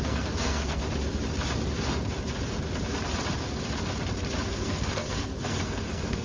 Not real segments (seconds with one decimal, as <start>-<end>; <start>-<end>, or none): 0.0-0.8; 4.5-6.2